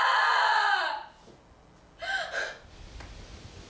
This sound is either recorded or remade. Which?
recorded